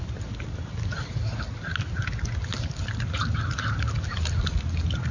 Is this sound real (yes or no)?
yes